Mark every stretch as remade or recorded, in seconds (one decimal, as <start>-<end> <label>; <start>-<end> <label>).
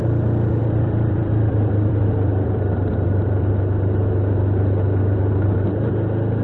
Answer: 0.0-0.6 recorded; 0.6-3.5 remade; 3.5-6.4 recorded